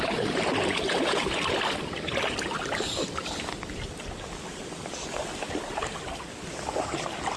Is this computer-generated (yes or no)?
no